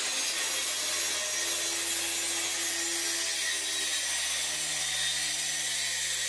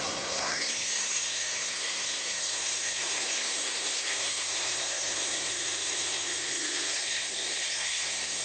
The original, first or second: first